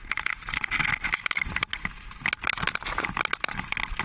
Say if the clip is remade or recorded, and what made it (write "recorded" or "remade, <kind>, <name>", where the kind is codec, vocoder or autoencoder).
recorded